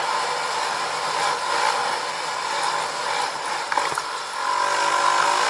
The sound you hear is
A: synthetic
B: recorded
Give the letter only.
B